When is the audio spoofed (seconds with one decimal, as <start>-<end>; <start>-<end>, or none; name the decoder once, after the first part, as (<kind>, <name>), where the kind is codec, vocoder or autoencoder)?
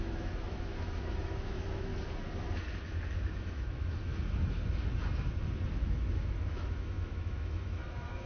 0.0-1.9 (autoencoder, DAC-VAE); 3.3-4.1; 5.7-8.3